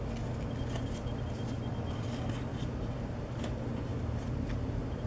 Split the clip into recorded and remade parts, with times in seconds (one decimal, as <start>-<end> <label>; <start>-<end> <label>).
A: 0.0-2.5 recorded; 2.5-3.3 remade; 3.3-3.9 recorded; 3.9-5.1 remade